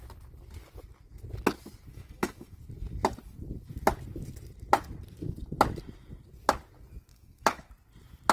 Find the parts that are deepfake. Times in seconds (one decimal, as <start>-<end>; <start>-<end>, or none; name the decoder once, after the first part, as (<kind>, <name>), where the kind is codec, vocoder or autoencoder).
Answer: 1.9-2.6 (autoencoder, DAC-VAE); 7.1-7.7